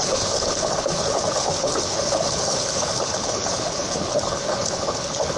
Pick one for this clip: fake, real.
fake